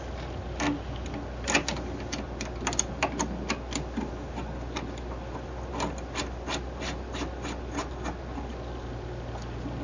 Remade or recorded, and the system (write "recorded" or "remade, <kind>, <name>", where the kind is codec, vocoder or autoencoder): recorded